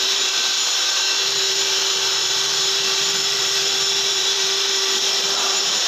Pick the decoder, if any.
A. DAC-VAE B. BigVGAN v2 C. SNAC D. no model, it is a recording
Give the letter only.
B